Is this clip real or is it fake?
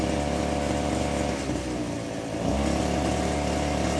real